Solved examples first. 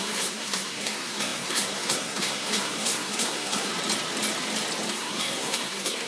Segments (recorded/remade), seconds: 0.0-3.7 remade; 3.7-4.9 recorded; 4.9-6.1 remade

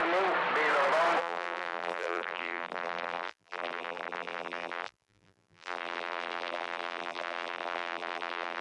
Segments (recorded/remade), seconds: 0.0-1.2 recorded; 1.2-8.6 remade

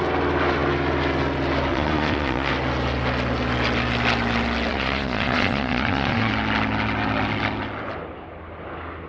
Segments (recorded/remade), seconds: 0.0-1.7 recorded; 1.7-2.5 remade; 2.5-4.7 recorded; 4.7-6.3 remade; 6.3-9.1 recorded